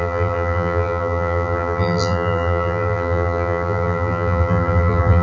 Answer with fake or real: fake